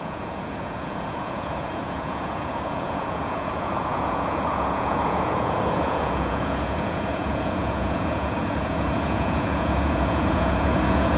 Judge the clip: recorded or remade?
remade